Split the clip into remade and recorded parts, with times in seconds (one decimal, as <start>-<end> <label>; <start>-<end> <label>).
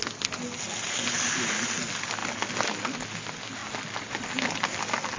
0.0-5.2 recorded